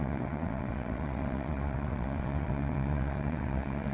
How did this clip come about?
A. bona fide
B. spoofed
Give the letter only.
B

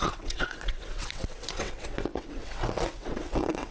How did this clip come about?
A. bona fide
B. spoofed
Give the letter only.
B